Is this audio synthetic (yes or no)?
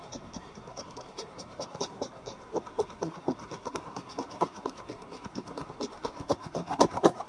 yes